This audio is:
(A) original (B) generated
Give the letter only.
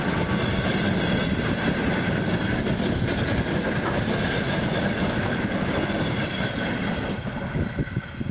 A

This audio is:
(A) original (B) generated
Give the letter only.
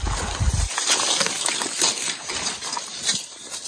A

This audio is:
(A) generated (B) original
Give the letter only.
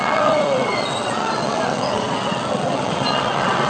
A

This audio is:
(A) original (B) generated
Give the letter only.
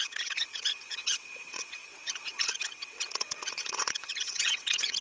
B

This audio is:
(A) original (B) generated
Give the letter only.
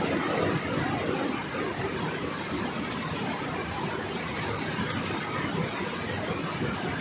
A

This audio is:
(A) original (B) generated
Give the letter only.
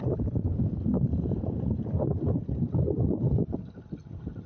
A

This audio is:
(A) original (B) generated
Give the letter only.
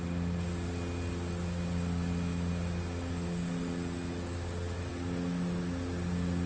A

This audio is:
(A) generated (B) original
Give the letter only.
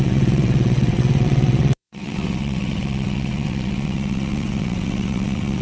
A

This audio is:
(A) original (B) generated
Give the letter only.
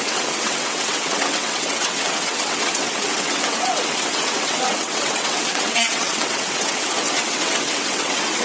B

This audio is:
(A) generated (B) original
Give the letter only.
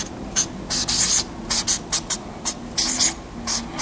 B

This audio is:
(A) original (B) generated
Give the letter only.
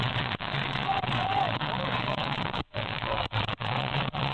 B